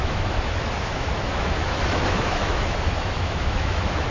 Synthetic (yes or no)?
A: yes